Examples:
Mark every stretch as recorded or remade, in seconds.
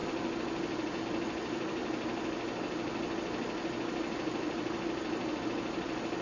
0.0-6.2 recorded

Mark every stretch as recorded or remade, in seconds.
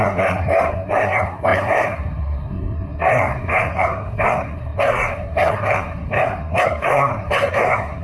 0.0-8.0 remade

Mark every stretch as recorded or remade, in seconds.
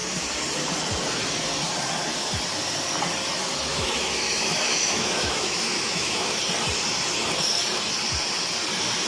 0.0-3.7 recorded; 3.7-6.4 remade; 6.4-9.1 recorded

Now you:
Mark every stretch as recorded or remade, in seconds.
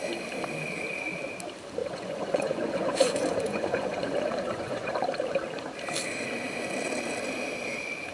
0.0-1.8 recorded; 1.8-4.9 remade; 4.9-8.1 recorded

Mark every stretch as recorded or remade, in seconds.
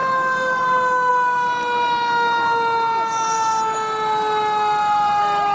0.0-5.5 recorded